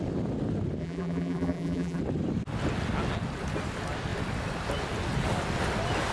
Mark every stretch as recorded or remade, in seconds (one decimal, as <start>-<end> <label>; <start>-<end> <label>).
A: 0.0-0.8 recorded; 0.8-2.0 remade; 2.0-6.1 recorded